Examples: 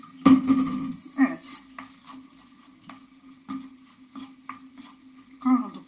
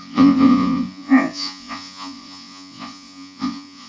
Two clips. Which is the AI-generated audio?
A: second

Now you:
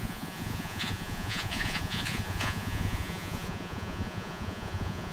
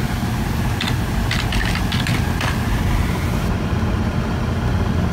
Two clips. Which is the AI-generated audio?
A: first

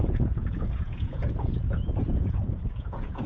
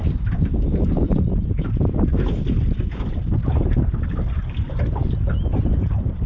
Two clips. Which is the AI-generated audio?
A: first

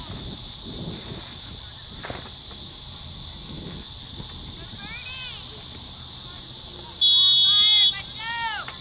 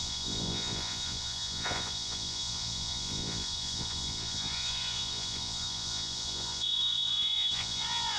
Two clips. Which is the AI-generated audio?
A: second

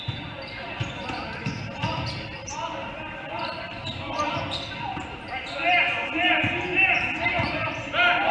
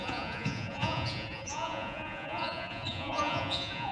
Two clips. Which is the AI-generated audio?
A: second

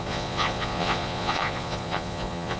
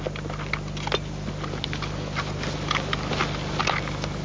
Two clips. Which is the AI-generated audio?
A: first